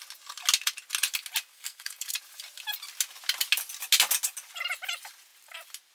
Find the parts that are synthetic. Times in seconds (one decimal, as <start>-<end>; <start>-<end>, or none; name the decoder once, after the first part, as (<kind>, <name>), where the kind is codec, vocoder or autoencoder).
1.5-2.1 (codec, SNAC)